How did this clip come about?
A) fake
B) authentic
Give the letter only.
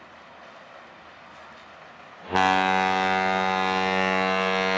B